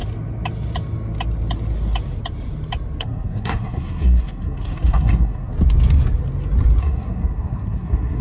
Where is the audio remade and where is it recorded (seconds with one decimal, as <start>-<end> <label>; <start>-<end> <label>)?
0.0-3.0 recorded; 3.0-5.5 remade; 5.5-6.8 recorded; 6.8-8.2 remade